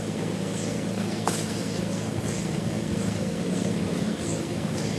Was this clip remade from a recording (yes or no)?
yes